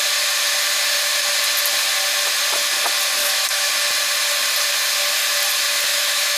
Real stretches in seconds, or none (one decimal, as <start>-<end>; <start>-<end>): 0.0-3.2; 3.7-5.9